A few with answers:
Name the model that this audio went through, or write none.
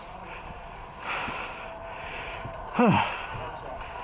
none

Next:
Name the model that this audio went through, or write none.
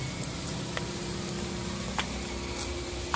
none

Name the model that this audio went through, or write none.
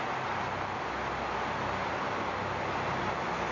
none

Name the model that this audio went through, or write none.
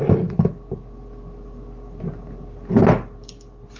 none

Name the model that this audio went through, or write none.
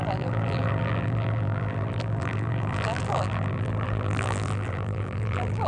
vocoder, BigVGAN v2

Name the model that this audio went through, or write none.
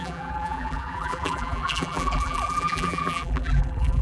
vocoder, BigVGAN v2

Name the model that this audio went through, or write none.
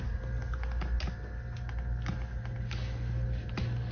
none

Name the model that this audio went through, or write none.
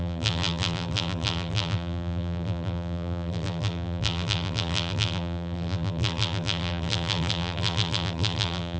vocoder, BigVGAN v2